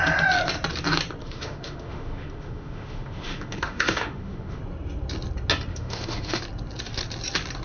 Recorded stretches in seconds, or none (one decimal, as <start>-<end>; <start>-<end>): 0.0-1.2; 4.6-5.7; 6.4-7.6